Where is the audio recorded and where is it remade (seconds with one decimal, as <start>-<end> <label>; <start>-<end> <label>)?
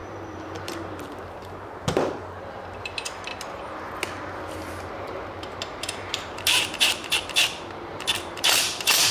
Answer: 0.0-2.2 remade; 2.2-2.8 recorded; 2.8-3.3 remade; 3.3-4.8 recorded; 4.8-9.1 remade